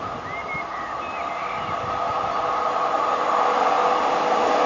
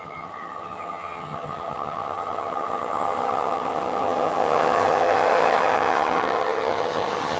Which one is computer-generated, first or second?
second